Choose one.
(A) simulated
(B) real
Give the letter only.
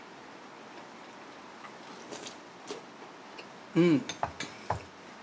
B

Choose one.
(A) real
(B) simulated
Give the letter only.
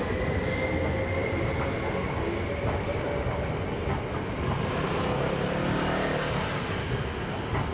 A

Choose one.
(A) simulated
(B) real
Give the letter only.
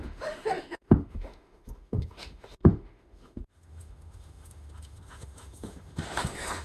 A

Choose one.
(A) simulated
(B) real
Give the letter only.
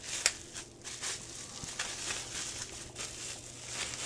B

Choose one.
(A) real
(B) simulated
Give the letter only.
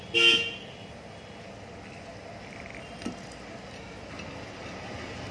A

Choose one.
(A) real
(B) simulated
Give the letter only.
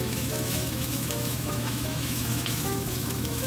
B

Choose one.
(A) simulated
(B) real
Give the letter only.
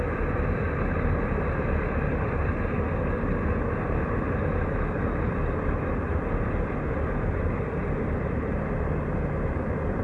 B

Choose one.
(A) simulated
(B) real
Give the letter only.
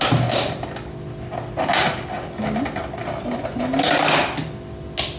B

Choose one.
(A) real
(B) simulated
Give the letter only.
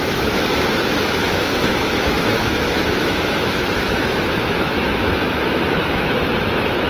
B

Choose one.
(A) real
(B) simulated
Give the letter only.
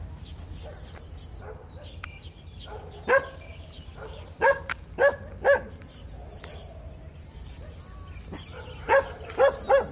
A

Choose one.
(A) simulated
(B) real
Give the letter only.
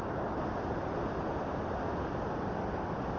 B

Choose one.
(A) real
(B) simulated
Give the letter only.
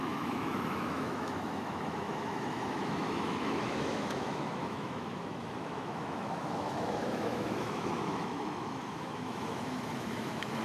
B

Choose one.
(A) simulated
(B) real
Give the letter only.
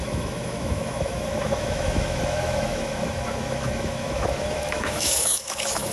A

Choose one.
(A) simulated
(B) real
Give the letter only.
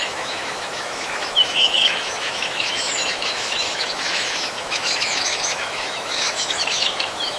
A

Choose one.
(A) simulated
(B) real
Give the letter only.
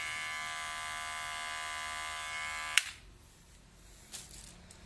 B